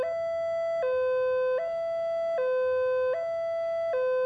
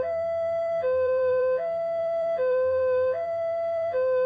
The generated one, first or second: second